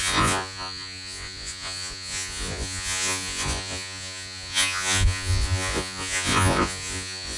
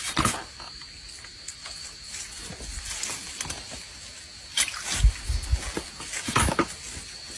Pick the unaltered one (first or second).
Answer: second